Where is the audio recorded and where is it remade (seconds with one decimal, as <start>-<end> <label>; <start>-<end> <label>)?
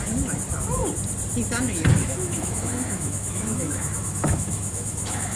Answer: 0.0-2.0 recorded; 2.0-5.4 remade